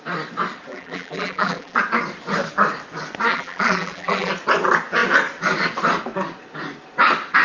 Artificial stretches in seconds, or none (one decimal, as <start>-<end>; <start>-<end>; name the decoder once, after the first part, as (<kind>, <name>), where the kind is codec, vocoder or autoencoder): 0.7-1.8 (vocoder, BigVGAN v2); 3.3-4.3